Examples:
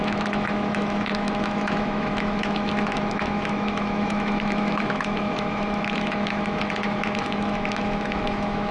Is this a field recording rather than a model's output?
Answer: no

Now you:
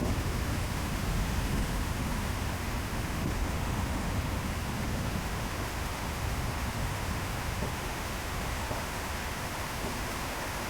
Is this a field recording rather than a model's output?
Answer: no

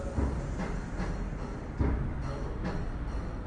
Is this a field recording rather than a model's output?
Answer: yes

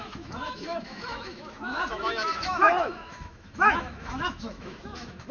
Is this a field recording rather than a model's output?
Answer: no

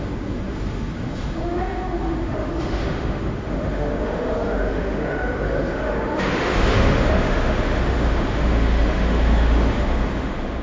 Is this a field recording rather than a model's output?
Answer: no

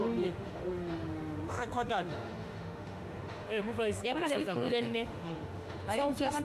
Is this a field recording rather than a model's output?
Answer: no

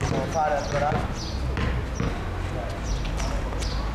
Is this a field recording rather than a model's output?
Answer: yes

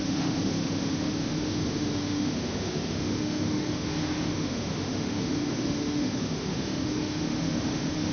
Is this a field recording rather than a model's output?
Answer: no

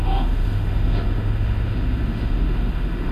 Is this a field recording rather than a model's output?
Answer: no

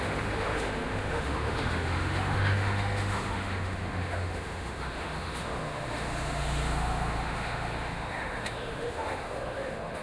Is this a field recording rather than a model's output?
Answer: no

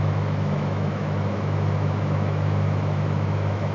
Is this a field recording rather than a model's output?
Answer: no